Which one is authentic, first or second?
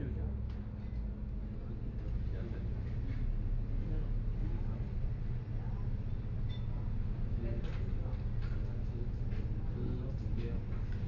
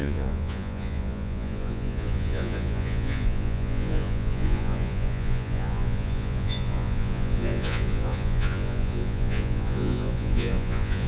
first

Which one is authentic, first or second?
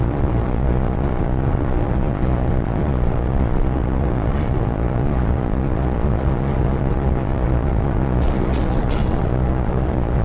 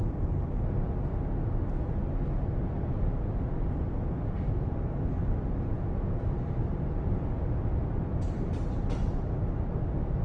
second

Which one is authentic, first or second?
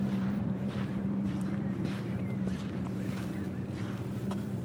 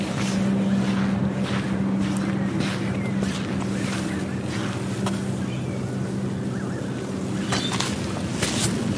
second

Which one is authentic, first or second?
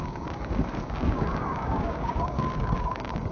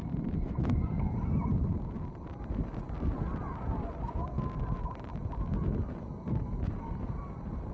second